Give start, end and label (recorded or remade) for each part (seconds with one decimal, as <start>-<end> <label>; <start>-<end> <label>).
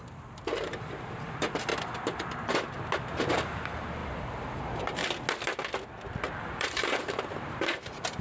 0.0-1.7 remade; 1.7-3.3 recorded; 3.3-5.0 remade; 5.0-6.4 recorded; 6.4-8.2 remade